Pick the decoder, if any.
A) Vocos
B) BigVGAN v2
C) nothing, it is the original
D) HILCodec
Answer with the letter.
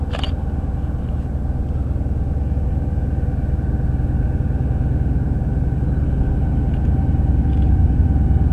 C